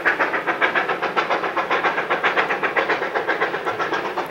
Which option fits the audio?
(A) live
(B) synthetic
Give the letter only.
A